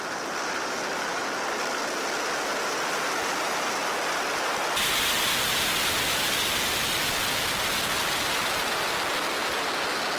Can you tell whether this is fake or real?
real